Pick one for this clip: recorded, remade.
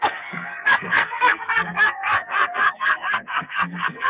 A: remade